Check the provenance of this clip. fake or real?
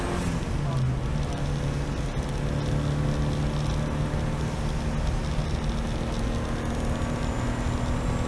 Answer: real